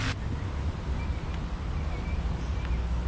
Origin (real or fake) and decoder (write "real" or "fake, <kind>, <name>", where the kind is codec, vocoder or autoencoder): real